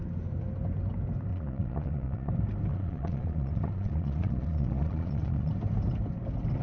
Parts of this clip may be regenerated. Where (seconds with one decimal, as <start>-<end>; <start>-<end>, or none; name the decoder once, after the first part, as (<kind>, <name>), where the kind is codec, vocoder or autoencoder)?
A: 1.3-2.3 (vocoder, Vocos); 2.7-5.5